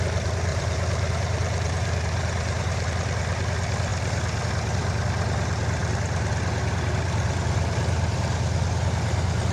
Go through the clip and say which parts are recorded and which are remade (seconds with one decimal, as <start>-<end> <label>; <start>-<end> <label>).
0.0-0.5 recorded; 0.5-2.9 remade; 2.9-9.5 recorded